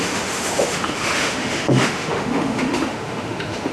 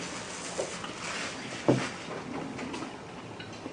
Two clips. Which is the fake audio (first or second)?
first